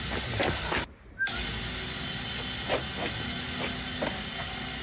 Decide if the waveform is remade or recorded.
recorded